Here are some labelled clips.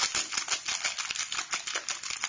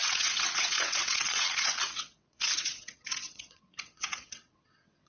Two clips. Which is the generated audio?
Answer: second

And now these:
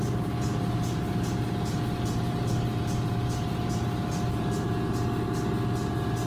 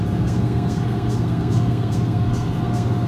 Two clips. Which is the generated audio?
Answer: second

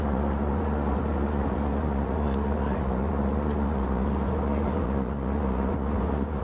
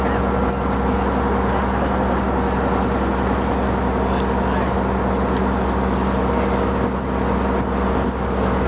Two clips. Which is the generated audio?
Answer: first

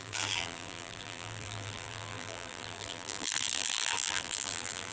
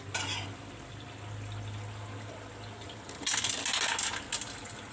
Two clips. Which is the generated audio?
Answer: first